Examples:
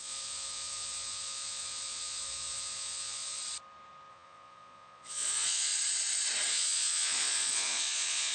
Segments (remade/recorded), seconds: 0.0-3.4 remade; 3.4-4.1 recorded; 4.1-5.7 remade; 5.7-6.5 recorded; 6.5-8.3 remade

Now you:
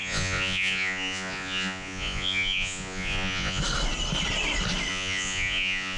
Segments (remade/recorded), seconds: 0.0-3.6 remade; 3.6-4.9 recorded; 4.9-6.0 remade

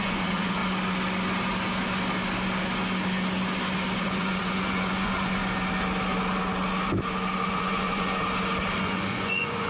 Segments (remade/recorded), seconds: 0.0-0.6 remade; 0.6-4.0 recorded; 4.0-5.4 remade; 5.4-7.6 recorded; 7.6-8.2 remade; 8.2-8.8 recorded; 8.8-9.7 remade

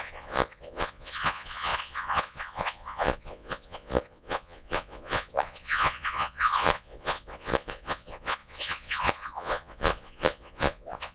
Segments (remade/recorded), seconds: 0.0-11.1 remade

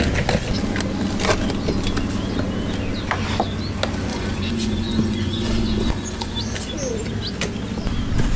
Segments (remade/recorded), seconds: 0.0-4.1 recorded; 4.1-6.4 remade; 6.4-8.4 recorded

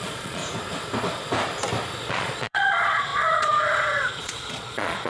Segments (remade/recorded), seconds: 0.0-0.4 remade; 0.4-2.1 recorded; 2.1-5.1 remade

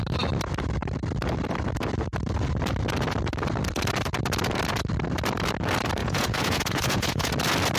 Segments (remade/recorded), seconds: 0.0-6.0 recorded; 6.0-7.3 remade; 7.3-7.8 recorded